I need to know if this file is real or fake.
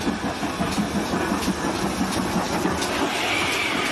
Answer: real